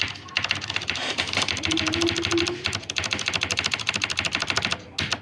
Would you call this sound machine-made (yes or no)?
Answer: no